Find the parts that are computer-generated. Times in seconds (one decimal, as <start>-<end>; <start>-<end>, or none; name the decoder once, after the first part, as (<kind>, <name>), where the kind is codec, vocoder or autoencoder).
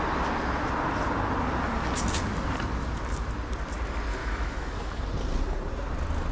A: 4.2-5.0 (autoencoder, DAC-VAE)